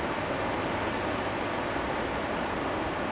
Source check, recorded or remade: recorded